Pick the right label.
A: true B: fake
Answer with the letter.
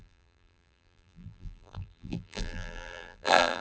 B